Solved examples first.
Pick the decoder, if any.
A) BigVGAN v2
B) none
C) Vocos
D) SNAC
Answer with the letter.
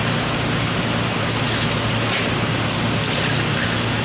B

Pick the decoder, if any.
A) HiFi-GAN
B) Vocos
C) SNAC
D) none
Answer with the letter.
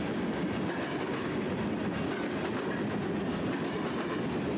D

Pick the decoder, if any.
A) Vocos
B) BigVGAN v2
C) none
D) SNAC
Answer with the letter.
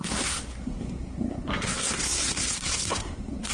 D